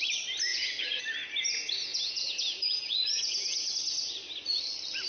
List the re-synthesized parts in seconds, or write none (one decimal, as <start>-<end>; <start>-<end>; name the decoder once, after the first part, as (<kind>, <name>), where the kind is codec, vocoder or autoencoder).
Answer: 0.5-1.0 (vocoder, Vocos); 1.9-3.7

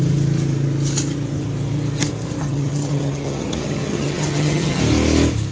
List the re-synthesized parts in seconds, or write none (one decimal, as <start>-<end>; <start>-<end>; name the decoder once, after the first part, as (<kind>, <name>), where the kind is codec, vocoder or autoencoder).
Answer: 2.4-4.8 (vocoder, HiFi-GAN)

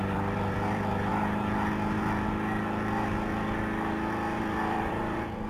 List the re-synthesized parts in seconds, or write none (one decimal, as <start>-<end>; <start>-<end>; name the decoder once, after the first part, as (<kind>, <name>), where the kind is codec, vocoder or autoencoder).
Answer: 0.0-1.1 (vocoder, BigVGAN v2); 4.4-5.5

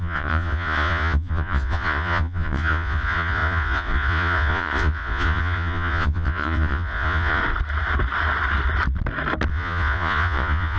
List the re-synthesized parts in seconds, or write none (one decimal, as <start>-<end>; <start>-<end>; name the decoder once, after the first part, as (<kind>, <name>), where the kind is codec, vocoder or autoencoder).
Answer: 0.0-7.4 (vocoder, Vocos); 9.5-10.8

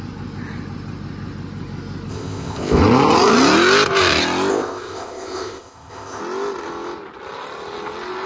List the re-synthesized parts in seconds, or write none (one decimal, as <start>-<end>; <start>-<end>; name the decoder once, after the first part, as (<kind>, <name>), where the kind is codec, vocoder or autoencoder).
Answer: 2.1-2.8 (codec, ZipCodec); 4.5-6.2

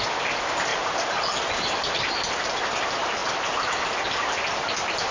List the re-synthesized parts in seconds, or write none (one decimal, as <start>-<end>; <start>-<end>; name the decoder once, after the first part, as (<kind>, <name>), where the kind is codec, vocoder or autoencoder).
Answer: none

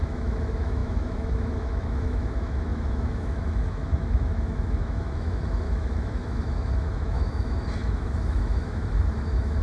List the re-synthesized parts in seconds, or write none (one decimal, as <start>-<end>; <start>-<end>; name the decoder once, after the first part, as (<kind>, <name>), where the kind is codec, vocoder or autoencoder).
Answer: 0.0-9.6 (autoencoder, DAC-VAE)

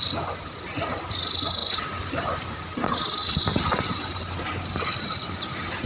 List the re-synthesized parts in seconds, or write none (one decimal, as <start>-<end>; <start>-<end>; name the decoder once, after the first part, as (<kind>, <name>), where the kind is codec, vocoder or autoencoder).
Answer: 1.6-2.5 (vocoder, BigVGAN v2); 3.2-4.8